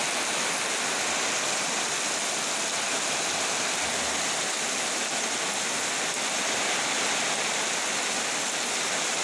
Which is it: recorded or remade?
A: recorded